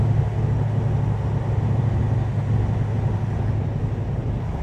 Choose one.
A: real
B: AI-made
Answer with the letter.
A